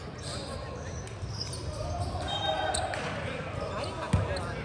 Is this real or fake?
real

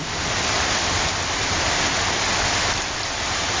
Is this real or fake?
real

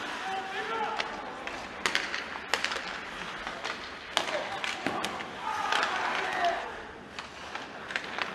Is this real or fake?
real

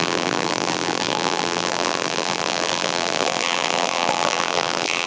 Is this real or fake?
fake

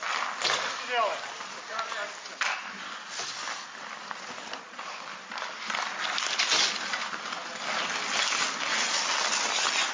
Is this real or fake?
real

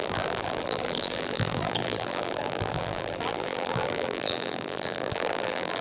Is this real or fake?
fake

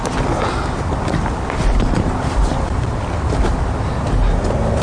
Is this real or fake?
real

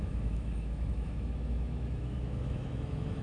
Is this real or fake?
fake